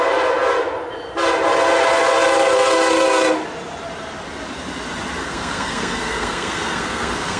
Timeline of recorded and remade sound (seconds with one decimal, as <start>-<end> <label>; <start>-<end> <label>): 0.0-5.2 recorded; 5.2-7.4 remade